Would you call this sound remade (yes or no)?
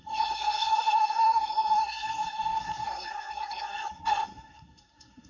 yes